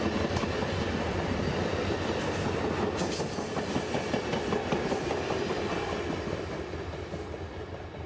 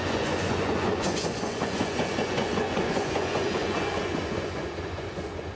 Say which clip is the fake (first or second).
second